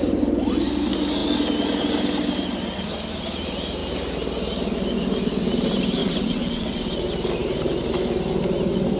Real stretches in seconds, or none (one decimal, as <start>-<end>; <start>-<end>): 0.0-6.0; 7.0-9.0